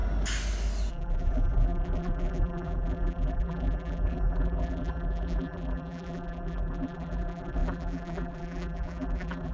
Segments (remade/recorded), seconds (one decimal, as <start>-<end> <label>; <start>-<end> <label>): 0.0-0.9 recorded; 0.9-9.5 remade